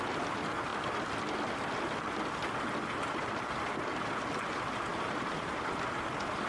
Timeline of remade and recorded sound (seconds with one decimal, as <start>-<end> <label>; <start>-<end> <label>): 0.0-6.5 recorded